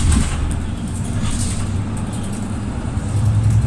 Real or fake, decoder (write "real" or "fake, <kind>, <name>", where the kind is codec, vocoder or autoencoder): real